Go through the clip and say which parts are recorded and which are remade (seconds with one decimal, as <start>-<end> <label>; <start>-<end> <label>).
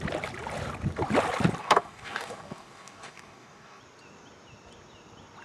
0.0-1.6 recorded; 1.6-3.8 remade; 3.8-5.4 recorded